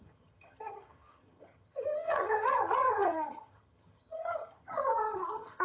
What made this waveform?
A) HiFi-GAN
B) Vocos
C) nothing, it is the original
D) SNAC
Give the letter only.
A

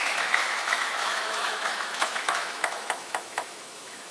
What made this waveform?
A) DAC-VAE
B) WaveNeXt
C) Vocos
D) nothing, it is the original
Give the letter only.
A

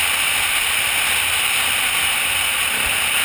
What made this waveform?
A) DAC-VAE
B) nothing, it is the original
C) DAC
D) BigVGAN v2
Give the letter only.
B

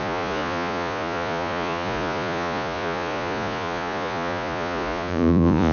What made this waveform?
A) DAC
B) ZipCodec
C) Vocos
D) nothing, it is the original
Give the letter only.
C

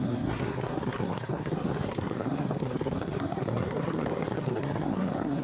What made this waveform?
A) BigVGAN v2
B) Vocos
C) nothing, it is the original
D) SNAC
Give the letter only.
D